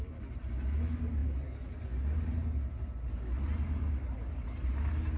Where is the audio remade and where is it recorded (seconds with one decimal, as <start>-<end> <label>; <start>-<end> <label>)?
0.0-5.2 recorded